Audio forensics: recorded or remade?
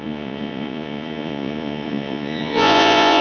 remade